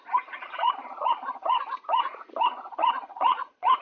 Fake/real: fake